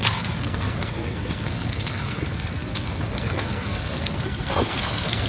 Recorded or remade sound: remade